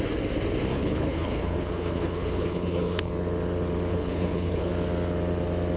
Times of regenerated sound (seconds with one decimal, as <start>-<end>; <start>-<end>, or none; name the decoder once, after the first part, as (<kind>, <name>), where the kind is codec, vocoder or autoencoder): 0.7-3.1 (codec, HILCodec); 3.9-4.7